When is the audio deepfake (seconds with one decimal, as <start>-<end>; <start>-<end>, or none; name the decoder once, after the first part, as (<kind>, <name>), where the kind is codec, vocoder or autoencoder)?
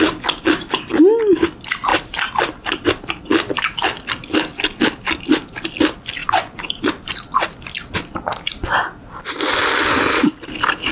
6.2-6.9 (vocoder, Vocos)